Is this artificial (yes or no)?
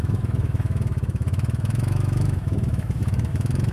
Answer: yes